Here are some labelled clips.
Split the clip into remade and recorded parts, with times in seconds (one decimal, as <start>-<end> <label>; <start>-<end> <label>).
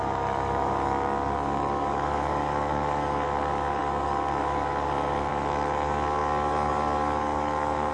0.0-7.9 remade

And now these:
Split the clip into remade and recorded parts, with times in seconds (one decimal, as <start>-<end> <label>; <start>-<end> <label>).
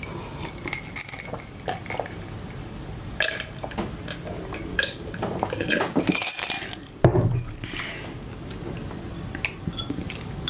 0.0-4.7 recorded; 4.7-6.5 remade; 6.5-7.1 recorded; 7.1-8.3 remade; 8.3-9.7 recorded; 9.7-10.5 remade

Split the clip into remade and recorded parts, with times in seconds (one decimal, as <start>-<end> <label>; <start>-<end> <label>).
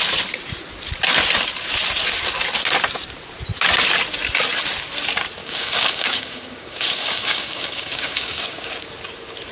0.0-5.4 recorded; 5.4-8.9 remade; 8.9-9.5 recorded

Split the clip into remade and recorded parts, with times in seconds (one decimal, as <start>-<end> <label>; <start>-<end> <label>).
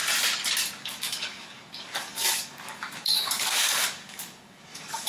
0.0-0.8 recorded; 0.8-5.1 remade